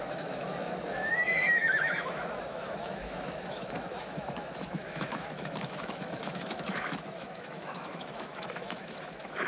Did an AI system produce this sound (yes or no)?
yes